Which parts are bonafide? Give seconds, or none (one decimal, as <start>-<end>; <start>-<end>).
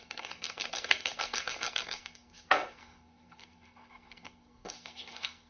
none